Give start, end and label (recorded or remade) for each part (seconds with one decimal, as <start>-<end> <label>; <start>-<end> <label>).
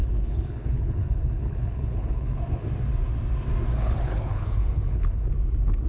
0.0-2.3 remade; 2.3-3.7 recorded; 3.7-5.3 remade; 5.3-5.9 recorded